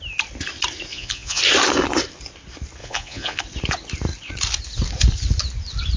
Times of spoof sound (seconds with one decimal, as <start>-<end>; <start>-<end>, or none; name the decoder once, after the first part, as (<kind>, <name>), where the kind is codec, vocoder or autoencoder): 0.9-1.4 (vocoder, Vocos); 2.8-3.4